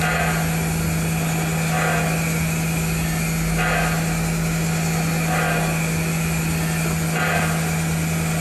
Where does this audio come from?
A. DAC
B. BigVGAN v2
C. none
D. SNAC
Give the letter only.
C